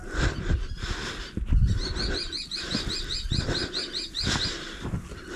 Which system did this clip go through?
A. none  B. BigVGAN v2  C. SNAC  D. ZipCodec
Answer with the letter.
A